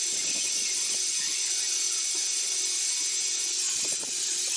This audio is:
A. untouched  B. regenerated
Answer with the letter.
A